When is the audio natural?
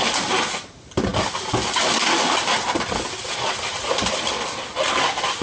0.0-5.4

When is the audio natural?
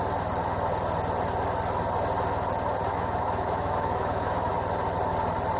0.0-2.9; 4.5-5.6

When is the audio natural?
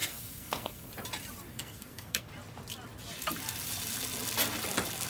0.9-1.5; 2.3-5.1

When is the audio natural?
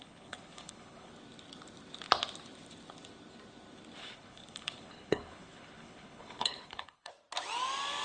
1.1-4.0; 7.1-8.0